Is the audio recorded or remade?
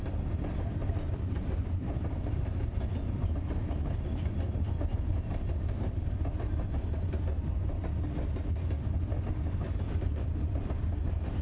recorded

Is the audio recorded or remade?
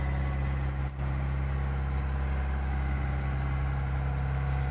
recorded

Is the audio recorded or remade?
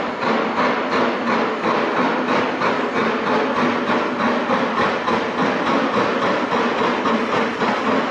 recorded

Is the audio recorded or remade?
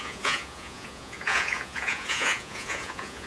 remade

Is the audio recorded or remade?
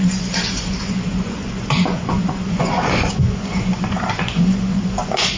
remade